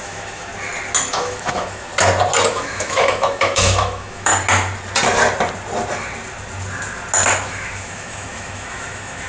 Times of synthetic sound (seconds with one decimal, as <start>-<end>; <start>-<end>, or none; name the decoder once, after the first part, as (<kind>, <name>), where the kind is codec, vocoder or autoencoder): 0.0-0.5 (autoencoder, DAC-VAE); 1.1-1.9; 2.5-4.3; 7.5-9.3